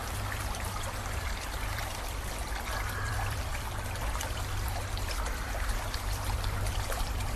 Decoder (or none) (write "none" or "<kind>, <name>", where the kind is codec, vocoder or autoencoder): vocoder, BigVGAN v2